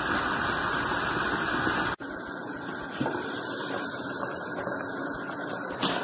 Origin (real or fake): real